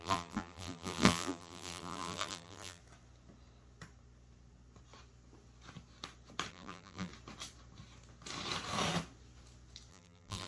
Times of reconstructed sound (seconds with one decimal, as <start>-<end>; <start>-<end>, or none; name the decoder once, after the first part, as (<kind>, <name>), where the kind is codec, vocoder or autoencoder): 0.0-2.8 (vocoder, BigVGAN v2); 6.5-7.1; 9.9-10.5